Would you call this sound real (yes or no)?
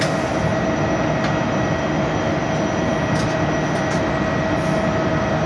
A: yes